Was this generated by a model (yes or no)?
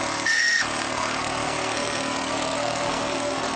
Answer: yes